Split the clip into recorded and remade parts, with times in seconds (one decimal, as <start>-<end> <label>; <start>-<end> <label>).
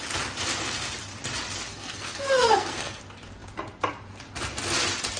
0.0-1.7 recorded; 1.7-3.0 remade; 3.0-5.2 recorded